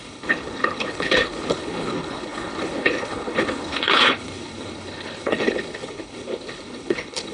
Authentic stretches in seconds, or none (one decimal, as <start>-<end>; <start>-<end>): none